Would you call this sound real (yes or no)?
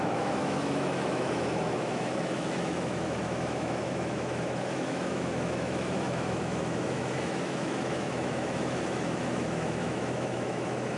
no